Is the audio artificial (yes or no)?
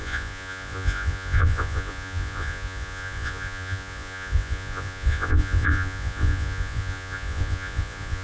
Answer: yes